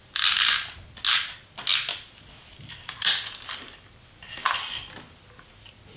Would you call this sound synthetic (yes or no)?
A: no